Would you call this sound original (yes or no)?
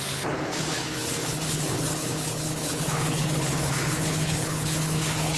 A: no